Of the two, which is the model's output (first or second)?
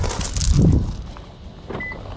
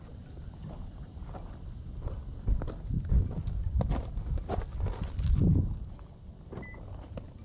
second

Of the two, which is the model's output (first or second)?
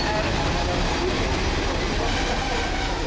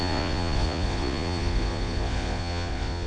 second